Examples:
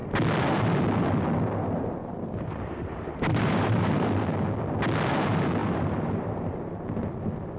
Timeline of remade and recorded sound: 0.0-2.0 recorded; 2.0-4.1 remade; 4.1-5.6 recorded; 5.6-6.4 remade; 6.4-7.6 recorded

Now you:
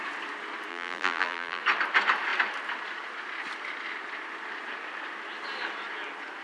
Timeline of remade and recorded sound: 0.0-0.7 recorded; 0.7-1.6 remade; 1.6-6.4 recorded